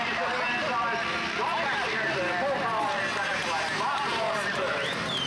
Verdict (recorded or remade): recorded